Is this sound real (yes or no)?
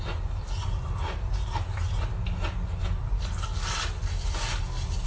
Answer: yes